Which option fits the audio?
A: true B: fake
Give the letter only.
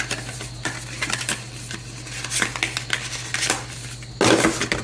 A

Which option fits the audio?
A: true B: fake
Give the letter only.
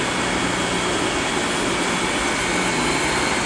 A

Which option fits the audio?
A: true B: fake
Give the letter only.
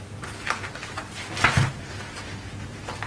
A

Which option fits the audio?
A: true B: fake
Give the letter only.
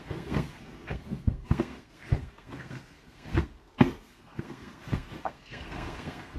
B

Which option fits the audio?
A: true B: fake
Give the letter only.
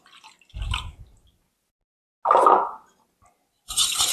A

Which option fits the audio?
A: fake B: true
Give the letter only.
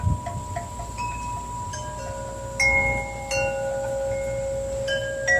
B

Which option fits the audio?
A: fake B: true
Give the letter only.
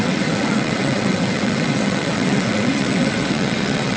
A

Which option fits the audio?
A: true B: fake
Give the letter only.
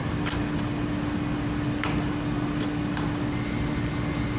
A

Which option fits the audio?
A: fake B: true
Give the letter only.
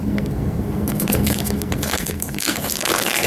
A